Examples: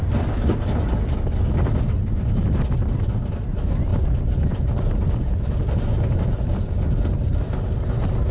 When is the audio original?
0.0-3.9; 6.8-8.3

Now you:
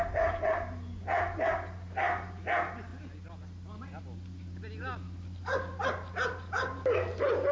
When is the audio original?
0.0-7.5